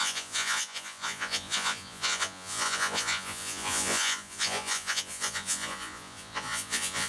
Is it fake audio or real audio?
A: fake